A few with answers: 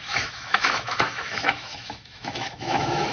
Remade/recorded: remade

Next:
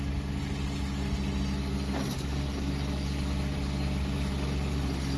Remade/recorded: recorded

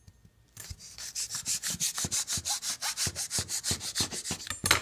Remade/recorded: recorded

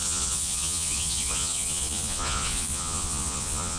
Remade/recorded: remade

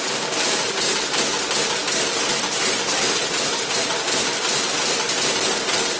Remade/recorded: recorded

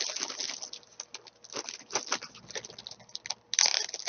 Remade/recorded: recorded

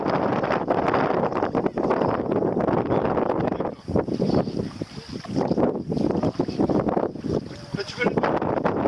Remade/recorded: recorded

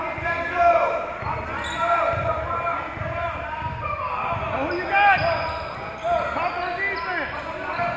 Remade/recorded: recorded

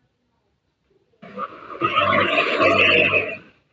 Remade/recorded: recorded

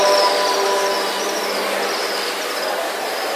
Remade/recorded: recorded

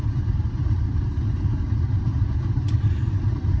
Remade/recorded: remade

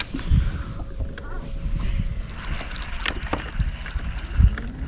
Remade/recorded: remade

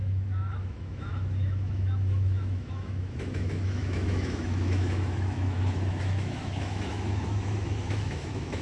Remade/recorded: remade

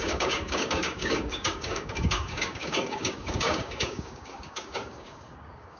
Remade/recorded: remade